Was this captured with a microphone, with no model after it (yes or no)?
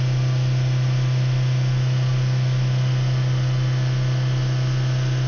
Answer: yes